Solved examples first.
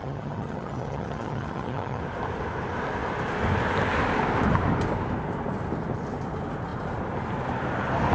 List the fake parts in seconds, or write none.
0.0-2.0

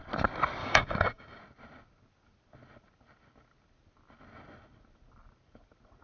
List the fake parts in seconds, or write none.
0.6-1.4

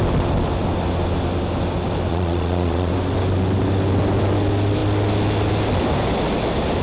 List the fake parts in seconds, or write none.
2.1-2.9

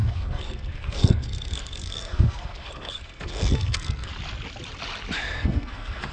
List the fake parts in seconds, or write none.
0.0-4.1; 5.4-6.1